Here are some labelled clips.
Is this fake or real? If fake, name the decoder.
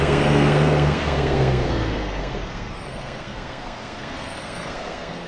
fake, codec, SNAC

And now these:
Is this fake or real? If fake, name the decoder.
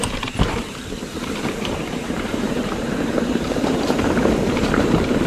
fake, vocoder, BigVGAN v2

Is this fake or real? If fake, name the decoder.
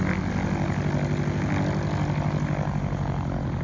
real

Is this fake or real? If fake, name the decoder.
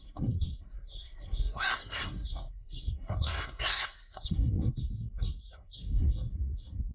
fake, codec, SNAC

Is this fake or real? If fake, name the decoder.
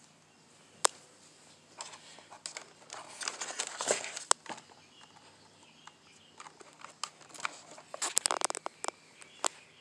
real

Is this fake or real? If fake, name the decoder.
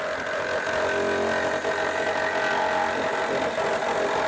real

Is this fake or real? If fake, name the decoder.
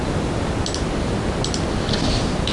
real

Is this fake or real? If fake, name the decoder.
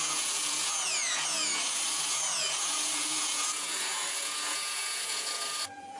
fake, vocoder, Vocos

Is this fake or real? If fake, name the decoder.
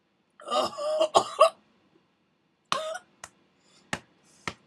real